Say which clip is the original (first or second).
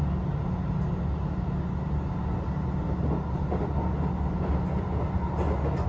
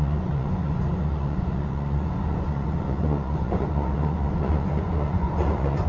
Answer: first